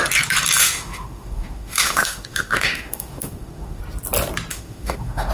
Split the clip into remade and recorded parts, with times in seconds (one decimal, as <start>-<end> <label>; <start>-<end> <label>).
0.0-0.6 recorded; 0.6-3.8 remade; 3.8-4.5 recorded; 4.5-5.3 remade